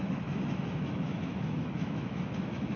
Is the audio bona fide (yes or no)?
no